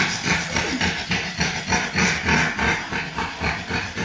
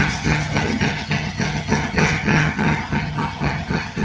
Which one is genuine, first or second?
first